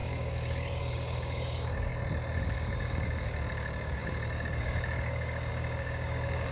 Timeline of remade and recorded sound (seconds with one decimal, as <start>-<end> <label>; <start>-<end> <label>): 0.0-1.9 remade; 1.9-2.4 recorded; 2.4-6.5 remade